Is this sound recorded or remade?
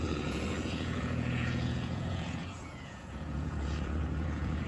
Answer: remade